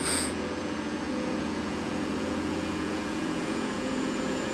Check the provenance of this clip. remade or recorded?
remade